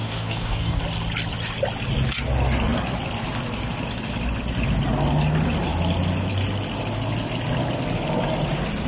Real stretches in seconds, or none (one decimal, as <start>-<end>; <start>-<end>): 0.8-8.9